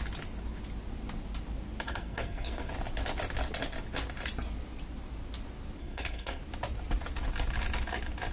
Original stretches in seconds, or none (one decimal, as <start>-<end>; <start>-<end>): 0.0-1.9; 2.7-5.8; 6.4-8.3